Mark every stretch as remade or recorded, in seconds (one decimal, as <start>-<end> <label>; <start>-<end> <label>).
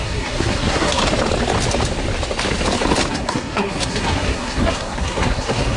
0.0-1.0 remade; 1.0-3.1 recorded; 3.1-5.8 remade